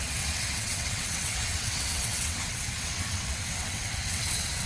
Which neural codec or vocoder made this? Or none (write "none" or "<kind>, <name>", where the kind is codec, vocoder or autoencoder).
vocoder, WaveNeXt